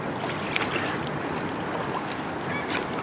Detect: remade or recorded recorded